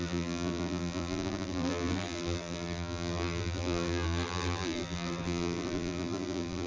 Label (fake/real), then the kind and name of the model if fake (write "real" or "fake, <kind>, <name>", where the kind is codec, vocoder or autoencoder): fake, vocoder, BigVGAN v2